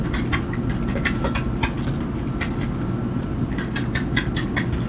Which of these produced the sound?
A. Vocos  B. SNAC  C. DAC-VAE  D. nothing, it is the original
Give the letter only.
D